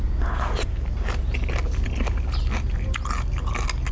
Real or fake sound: real